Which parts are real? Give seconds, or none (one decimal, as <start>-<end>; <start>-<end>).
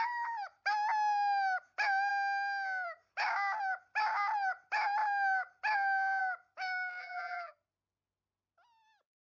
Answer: 0.0-7.0; 7.5-9.3